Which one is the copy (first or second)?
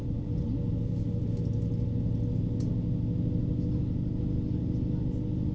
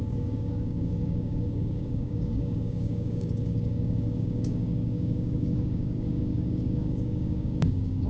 second